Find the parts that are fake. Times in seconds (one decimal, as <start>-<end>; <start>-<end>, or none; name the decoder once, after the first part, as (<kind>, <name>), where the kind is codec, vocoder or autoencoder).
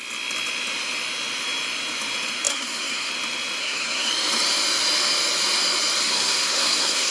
2.5-3.1 (codec, SNAC); 3.6-4.1; 6.0-7.1